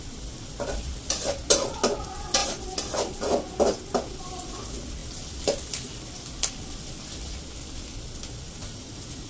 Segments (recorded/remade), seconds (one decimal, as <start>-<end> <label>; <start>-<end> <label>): 0.0-8.6 recorded; 8.6-9.3 remade